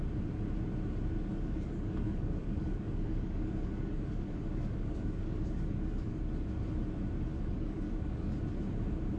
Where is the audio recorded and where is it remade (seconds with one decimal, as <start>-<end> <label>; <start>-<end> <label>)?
0.0-1.3 recorded; 1.3-6.3 remade; 6.3-7.3 recorded; 7.3-8.4 remade; 8.4-9.2 recorded